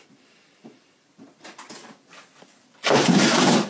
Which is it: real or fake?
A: fake